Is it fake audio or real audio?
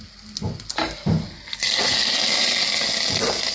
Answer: real